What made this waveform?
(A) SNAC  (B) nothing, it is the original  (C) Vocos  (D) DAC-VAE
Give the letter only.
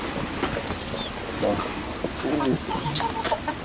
B